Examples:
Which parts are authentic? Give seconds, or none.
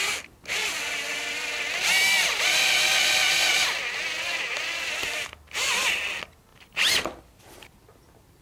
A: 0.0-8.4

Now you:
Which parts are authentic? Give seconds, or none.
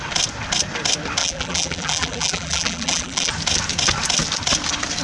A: 0.0-1.2; 3.3-5.0